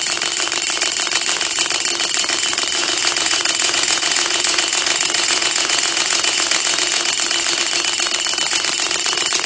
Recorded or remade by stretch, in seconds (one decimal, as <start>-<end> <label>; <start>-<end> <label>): 0.0-2.8 recorded; 2.8-7.1 remade; 7.1-9.5 recorded